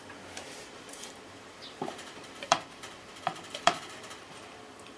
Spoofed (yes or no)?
yes